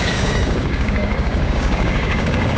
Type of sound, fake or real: fake